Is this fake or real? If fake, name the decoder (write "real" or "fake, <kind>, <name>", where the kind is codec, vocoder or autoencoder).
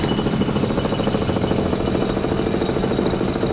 real